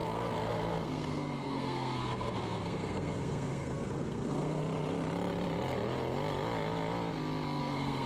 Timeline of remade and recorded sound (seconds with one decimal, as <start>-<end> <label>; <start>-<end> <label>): 0.0-4.6 remade; 4.6-7.6 recorded; 7.6-8.1 remade